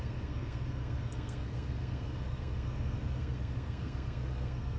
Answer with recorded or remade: remade